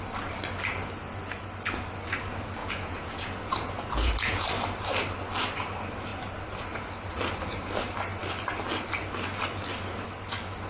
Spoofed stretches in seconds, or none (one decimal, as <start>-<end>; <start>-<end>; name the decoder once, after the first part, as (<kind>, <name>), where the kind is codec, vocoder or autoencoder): 2.6-4.5 (vocoder, Vocos)